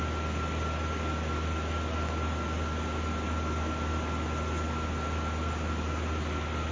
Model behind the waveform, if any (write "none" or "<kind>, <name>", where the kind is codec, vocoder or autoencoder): none